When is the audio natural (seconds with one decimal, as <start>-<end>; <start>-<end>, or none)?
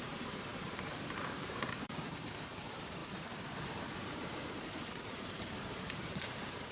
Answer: 3.0-4.0